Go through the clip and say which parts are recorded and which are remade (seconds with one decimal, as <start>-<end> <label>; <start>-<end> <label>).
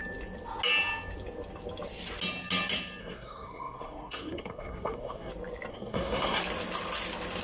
0.0-3.0 recorded; 3.0-5.3 remade; 5.3-5.7 recorded; 5.7-6.4 remade; 6.4-7.4 recorded